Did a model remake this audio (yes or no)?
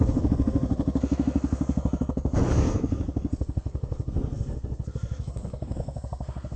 yes